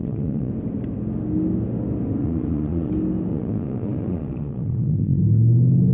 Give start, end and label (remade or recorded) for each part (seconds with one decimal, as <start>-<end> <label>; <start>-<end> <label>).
0.0-0.5 remade; 0.5-2.2 recorded; 2.2-2.9 remade; 2.9-3.3 recorded; 3.3-5.2 remade; 5.2-5.9 recorded